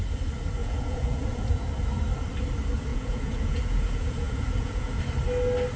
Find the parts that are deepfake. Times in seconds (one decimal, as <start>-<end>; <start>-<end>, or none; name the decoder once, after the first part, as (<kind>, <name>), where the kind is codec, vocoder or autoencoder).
0.6-1.5 (vocoder, Vocos); 2.9-5.0